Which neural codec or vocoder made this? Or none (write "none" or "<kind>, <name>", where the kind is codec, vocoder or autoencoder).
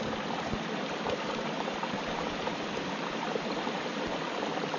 none